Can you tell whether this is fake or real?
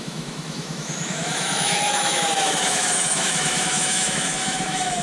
fake